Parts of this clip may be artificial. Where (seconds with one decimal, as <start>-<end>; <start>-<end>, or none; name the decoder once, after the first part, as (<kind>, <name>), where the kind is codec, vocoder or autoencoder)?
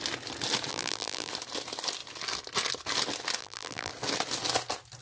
0.7-1.3 (vocoder, BigVGAN v2); 3.4-3.9